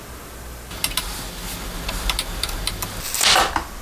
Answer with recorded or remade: recorded